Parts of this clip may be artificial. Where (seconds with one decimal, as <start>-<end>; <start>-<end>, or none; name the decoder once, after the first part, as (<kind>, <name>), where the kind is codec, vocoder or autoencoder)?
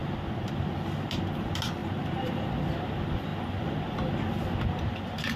1.8-2.5 (vocoder, BigVGAN v2)